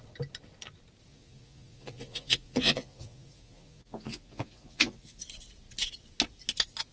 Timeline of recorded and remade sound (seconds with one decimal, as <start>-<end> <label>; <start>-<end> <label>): 0.0-1.1 recorded; 1.1-5.2 remade; 5.2-6.9 recorded